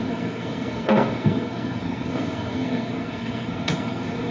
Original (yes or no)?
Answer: no